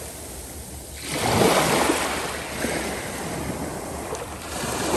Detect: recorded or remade recorded